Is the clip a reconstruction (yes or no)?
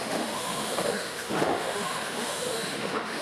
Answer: yes